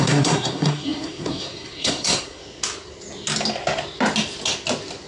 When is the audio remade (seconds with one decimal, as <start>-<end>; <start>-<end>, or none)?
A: 0.0-2.4